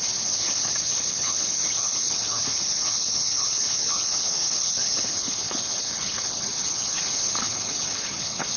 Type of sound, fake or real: fake